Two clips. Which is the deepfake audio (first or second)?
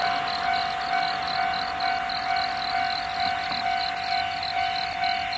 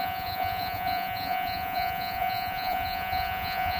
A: second